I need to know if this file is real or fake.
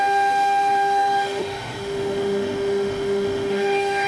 fake